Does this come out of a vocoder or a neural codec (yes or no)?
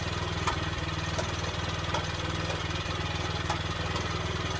no